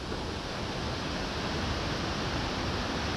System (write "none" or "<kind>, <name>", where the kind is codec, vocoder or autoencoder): none